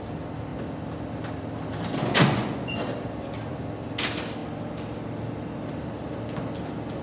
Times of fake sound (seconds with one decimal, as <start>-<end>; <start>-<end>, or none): 2.0-2.8